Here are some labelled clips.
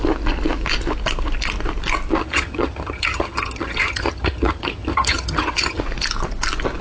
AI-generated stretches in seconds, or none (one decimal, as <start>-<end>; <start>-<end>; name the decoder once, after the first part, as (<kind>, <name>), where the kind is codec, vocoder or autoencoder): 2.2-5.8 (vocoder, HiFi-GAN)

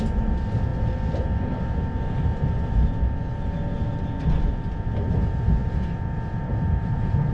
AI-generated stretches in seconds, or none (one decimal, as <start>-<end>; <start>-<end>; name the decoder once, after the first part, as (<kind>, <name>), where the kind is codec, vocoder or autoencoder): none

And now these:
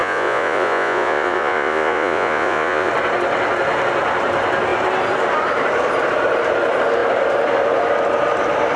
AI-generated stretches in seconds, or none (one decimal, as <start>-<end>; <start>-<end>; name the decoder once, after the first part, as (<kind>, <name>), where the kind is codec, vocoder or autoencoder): 0.0-2.9 (vocoder, Vocos)

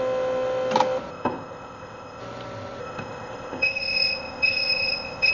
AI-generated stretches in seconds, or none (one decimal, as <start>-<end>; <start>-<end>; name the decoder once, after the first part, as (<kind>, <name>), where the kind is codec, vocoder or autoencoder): 1.1-2.2 (codec, ZipCodec); 2.8-5.3

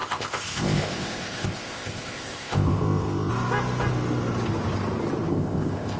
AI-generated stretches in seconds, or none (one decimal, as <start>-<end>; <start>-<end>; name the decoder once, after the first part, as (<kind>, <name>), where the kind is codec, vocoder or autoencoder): 0.0-3.3 (codec, ZipCodec); 5.3-6.0